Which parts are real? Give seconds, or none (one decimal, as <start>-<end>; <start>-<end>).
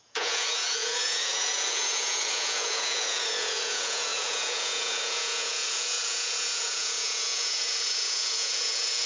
none